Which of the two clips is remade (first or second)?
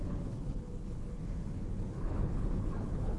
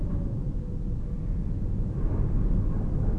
first